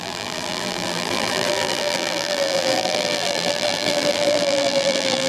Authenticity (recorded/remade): remade